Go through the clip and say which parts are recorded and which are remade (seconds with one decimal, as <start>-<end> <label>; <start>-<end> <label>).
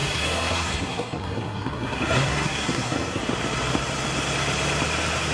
0.0-3.2 remade; 3.2-5.3 recorded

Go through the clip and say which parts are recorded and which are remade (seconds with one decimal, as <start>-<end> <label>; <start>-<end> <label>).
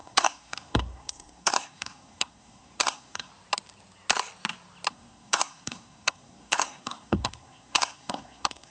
0.0-3.3 remade; 3.3-4.9 recorded; 4.9-8.7 remade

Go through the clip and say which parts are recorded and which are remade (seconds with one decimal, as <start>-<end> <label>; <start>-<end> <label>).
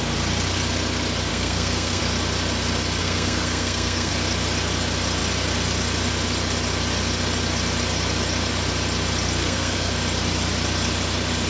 0.0-1.3 recorded; 1.3-2.0 remade; 2.0-3.0 recorded; 3.0-4.1 remade; 4.1-9.4 recorded; 9.4-9.9 remade; 9.9-11.5 recorded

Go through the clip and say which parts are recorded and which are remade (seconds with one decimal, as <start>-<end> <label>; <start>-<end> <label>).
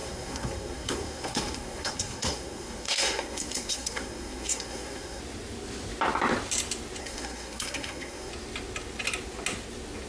0.0-5.2 remade; 5.2-7.0 recorded; 7.0-8.3 remade; 8.3-10.1 recorded